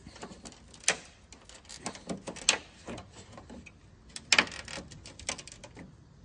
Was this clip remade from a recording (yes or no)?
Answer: no